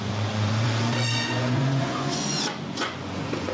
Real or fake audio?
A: fake